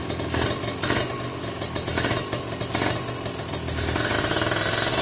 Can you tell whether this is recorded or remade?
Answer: recorded